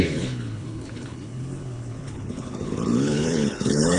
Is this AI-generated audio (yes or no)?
yes